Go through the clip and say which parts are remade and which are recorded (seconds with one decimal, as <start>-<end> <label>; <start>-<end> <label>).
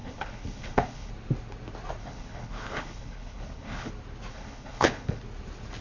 0.0-1.1 remade; 1.1-2.0 recorded; 2.0-3.9 remade; 3.9-4.3 recorded; 4.3-5.2 remade; 5.2-5.8 recorded